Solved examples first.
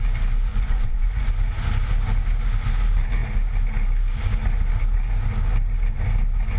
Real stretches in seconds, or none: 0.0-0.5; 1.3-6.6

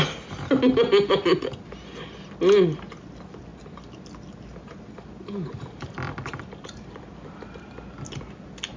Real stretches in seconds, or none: 0.0-8.8

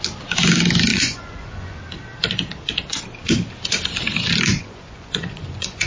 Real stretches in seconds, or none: 0.0-0.9; 1.8-4.5

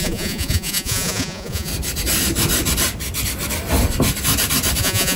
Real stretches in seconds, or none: 1.7-4.8